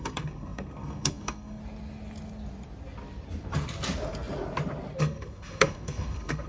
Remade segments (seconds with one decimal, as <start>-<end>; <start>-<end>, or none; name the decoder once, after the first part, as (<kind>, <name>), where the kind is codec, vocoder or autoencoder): 0.0-1.6 (codec, SNAC); 5.0-6.5

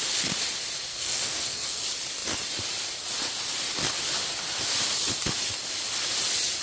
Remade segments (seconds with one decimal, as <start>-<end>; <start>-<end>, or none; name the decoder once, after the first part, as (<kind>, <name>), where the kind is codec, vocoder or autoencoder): 0.9-1.8 (codec, SNAC)

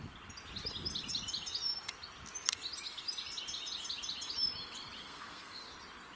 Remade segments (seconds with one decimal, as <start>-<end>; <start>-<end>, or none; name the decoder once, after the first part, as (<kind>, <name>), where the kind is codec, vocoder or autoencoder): 5.0-5.6 (codec, SNAC)

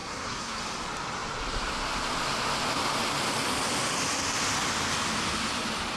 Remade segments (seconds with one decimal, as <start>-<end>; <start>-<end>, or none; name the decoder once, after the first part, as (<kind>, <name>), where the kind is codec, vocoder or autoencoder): 0.0-0.6 (codec, SNAC)

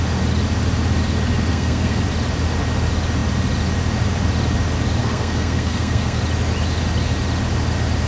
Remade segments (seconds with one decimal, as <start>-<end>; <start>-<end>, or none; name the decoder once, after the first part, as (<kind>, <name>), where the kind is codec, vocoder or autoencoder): 1.5-2.0 (codec, SNAC); 5.0-6.2

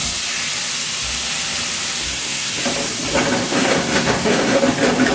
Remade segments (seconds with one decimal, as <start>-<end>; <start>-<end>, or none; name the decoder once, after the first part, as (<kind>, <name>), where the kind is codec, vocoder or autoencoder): 2.0-2.6 (codec, SNAC); 3.4-4.6

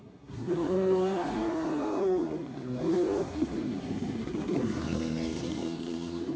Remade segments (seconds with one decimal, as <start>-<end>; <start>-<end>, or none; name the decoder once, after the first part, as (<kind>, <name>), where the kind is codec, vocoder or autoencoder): 0.0-6.4 (codec, SNAC)